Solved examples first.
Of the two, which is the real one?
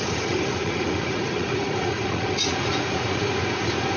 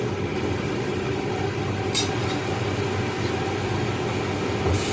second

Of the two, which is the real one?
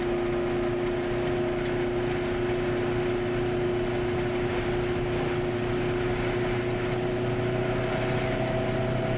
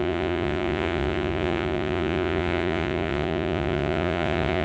first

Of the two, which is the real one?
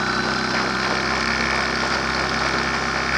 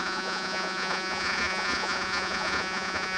first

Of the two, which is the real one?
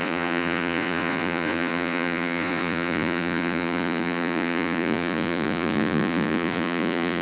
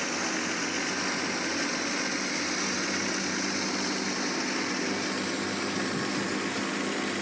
second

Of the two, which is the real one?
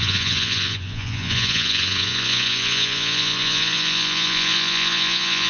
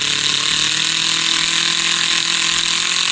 second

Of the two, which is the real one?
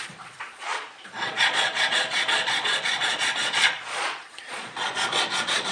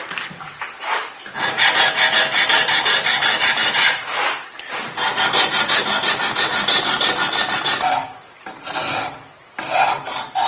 second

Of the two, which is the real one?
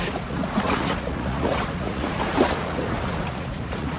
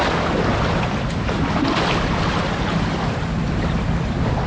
second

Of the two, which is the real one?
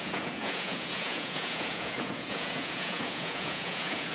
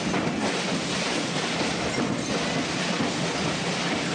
second